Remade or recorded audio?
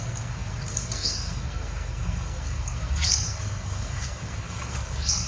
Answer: remade